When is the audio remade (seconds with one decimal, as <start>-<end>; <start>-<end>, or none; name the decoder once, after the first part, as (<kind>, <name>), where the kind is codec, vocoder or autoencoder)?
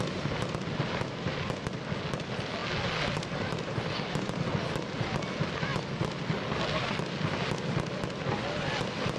none